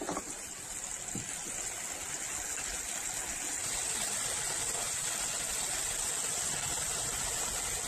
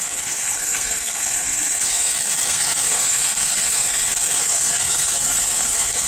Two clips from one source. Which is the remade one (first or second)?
second